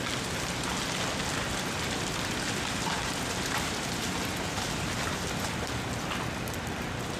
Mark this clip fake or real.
real